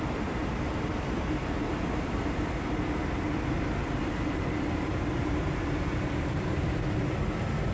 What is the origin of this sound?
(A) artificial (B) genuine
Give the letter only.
A